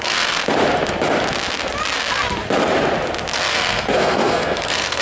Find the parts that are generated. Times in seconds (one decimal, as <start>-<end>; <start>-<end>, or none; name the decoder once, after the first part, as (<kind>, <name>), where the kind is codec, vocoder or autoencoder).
0.0-0.4 (codec, SNAC); 3.4-5.0